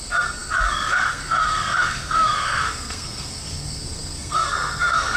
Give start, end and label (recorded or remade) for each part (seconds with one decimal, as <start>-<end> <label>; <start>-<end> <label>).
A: 0.0-5.2 remade